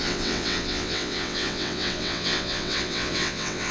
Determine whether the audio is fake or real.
fake